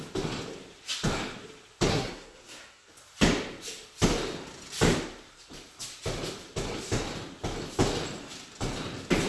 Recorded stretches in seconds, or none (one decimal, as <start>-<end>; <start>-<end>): 0.0-1.9; 2.9-9.3